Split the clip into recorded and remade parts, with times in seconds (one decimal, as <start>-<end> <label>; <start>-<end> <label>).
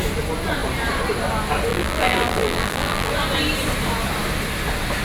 0.0-1.7 recorded; 1.7-3.1 remade; 3.1-5.0 recorded